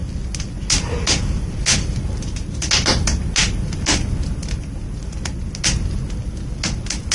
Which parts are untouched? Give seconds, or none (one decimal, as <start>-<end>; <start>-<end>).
0.0-7.1